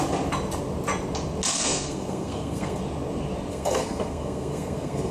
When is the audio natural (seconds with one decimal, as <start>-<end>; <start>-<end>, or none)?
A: 0.0-1.5; 2.8-3.5